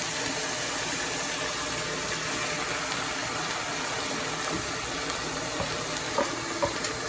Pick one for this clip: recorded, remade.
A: recorded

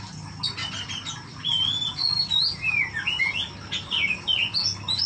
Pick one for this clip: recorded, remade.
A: recorded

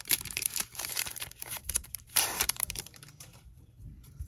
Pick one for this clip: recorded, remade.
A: remade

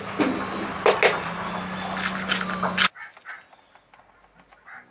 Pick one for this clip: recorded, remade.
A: recorded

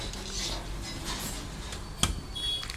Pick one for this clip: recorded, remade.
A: recorded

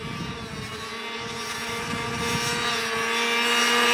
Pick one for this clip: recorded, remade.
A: recorded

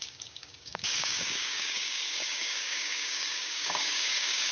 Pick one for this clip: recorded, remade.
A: remade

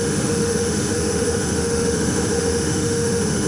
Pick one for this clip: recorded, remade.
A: remade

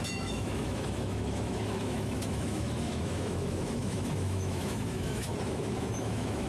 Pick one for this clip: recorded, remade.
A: remade